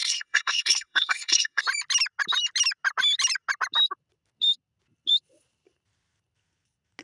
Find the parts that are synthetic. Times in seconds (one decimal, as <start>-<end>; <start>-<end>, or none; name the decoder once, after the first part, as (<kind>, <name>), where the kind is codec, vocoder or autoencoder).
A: 0.0-1.6 (codec, SNAC)